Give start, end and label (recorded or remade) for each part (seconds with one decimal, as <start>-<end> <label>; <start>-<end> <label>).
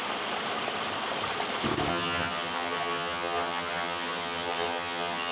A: 0.0-1.9 recorded; 1.9-5.3 remade